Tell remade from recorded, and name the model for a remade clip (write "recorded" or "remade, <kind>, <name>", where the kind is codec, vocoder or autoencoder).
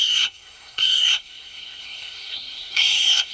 remade, codec, SNAC